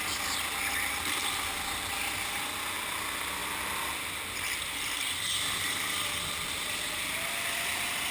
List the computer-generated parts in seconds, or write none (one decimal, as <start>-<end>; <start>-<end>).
none